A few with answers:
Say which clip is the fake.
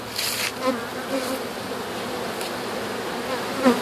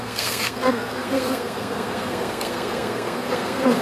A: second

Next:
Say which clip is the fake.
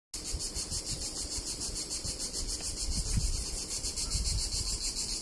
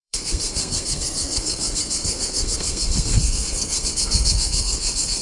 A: second